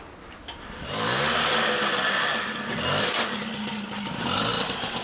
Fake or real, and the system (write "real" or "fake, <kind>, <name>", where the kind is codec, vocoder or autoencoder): real